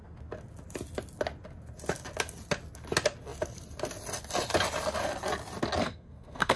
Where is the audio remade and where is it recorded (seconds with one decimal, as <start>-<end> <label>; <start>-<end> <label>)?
0.0-5.8 recorded; 5.8-6.6 remade